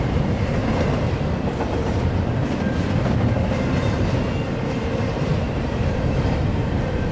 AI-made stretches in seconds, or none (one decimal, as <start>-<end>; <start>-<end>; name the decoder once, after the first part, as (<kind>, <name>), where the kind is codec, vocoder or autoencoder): 0.0-0.6 (vocoder, BigVGAN v2); 1.7-2.4; 4.8-7.1